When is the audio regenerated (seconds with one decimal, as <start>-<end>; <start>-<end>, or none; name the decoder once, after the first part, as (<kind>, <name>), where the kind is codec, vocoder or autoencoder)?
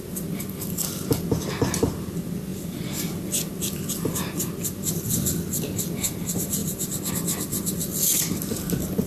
none